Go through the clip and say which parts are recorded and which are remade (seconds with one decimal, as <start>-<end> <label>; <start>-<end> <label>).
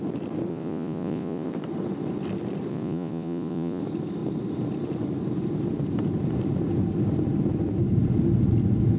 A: 0.0-0.5 recorded; 0.5-1.5 remade; 1.5-2.7 recorded; 2.7-3.8 remade; 3.8-9.0 recorded